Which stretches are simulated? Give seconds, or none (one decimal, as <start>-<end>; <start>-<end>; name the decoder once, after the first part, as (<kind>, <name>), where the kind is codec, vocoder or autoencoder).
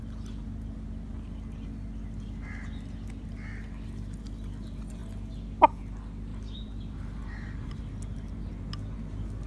6.3-7.8 (vocoder, BigVGAN v2)